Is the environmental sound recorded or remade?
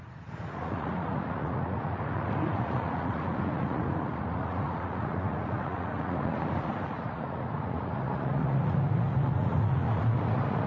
remade